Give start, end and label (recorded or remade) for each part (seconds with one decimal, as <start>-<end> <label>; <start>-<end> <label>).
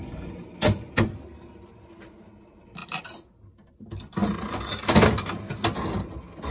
0.0-6.5 recorded